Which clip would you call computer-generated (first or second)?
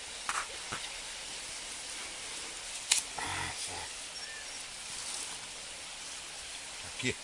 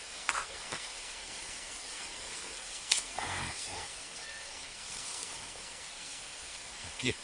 second